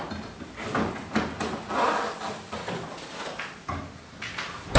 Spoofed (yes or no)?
no